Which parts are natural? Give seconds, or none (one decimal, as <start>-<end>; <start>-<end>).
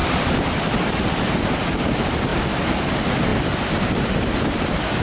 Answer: 0.0-5.0